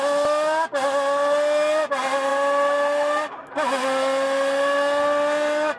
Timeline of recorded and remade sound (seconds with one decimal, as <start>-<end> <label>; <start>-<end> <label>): 0.0-5.8 recorded